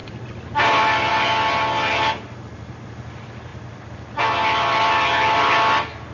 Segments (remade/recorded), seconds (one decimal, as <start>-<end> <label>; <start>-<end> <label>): 0.0-6.1 recorded